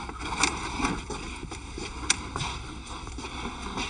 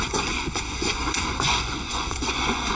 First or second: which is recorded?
first